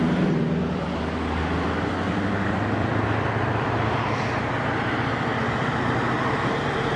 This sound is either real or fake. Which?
fake